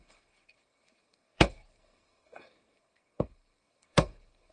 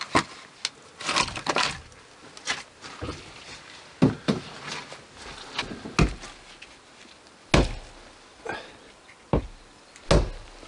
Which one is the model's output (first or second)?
first